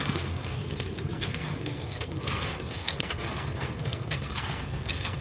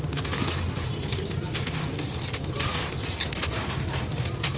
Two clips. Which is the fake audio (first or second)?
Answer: first